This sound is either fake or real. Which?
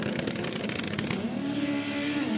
real